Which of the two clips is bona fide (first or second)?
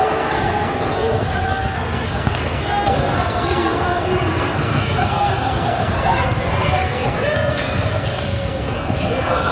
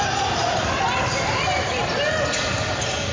second